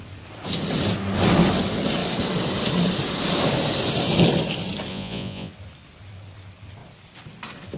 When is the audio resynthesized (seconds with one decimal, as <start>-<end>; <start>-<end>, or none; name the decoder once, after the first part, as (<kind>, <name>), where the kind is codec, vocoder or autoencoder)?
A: 4.9-5.5 (vocoder, Vocos)